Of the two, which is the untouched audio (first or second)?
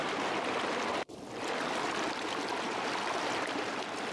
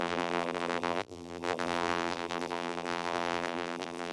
first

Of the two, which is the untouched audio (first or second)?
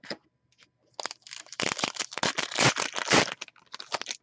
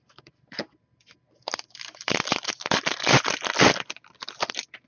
first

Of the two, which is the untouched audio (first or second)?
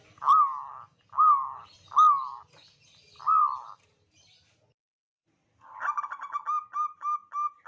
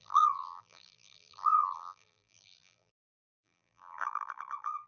first